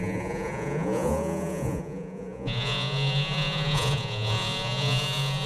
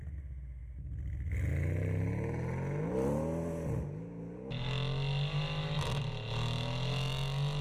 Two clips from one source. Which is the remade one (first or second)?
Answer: first